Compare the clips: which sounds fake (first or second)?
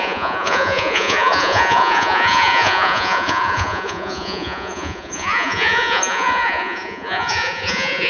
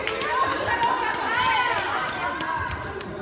first